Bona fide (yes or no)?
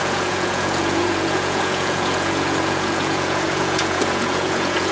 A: no